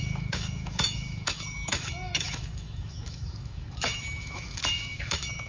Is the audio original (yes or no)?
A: no